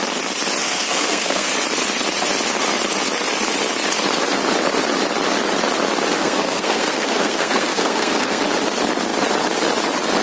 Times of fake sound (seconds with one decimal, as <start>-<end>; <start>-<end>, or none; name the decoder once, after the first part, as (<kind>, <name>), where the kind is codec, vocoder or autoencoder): 0.6-1.5 (codec, SNAC); 6.1-8.4

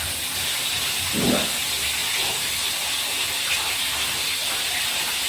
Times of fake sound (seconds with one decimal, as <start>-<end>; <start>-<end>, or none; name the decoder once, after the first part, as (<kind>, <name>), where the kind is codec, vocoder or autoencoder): none

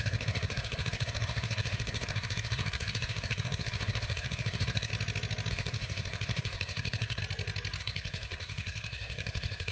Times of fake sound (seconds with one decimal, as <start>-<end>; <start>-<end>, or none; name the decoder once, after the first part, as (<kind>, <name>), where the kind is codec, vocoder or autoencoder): 0.0-4.9 (codec, SNAC); 5.5-7.2; 7.8-9.7

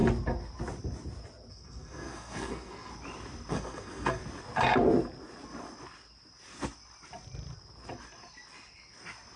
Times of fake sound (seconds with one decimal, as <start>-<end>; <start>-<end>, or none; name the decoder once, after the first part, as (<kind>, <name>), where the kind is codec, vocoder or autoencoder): 1.5-2.9 (codec, SNAC); 3.5-4.2

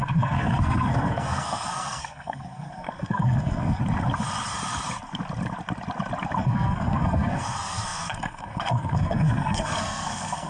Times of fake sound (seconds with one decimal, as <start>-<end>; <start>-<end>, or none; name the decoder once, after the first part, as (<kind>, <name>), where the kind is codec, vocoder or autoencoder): 0.0-3.8 (codec, SNAC); 6.4-10.5